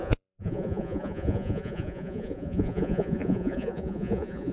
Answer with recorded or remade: remade